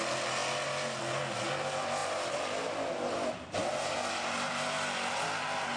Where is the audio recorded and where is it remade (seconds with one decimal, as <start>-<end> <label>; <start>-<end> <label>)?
0.0-5.8 recorded